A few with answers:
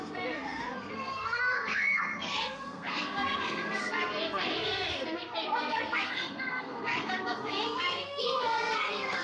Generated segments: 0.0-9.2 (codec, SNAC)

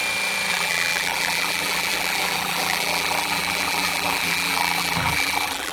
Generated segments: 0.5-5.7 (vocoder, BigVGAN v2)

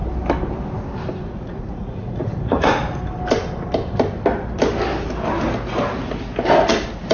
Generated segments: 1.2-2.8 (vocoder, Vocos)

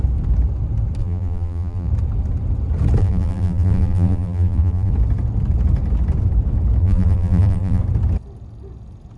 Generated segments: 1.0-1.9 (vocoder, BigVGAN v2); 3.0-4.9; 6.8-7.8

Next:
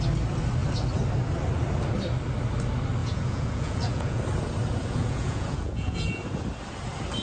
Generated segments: 3.0-4.2 (vocoder, Vocos); 4.8-6.2